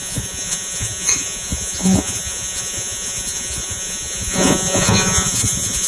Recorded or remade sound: remade